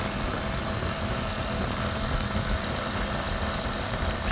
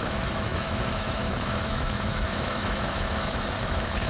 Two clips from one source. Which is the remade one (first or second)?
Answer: second